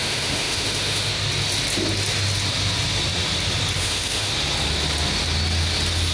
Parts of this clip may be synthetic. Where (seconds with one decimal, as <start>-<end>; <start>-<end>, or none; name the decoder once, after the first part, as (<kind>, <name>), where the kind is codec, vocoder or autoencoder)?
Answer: 0.0-1.1 (autoencoder, DAC-VAE); 3.8-4.3